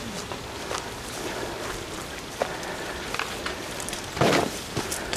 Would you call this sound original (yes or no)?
yes